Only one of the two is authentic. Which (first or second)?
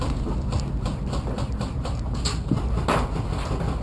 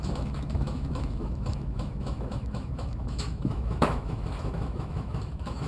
first